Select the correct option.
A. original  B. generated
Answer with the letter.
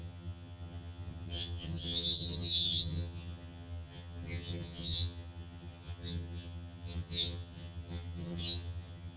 B